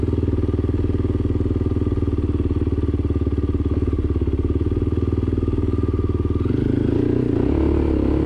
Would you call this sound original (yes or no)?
yes